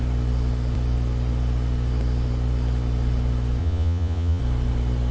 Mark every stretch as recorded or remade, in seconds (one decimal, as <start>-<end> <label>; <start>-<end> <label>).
0.0-3.6 recorded; 3.6-4.4 remade; 4.4-5.1 recorded